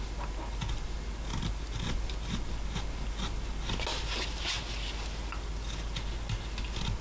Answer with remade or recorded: recorded